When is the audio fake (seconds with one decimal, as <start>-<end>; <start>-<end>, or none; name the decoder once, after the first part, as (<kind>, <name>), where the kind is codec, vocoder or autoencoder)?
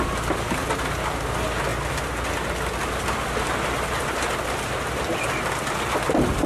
none